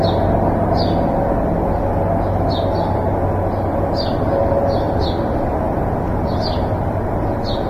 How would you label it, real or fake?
real